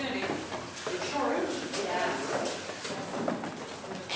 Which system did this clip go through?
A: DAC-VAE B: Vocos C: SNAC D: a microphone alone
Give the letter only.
D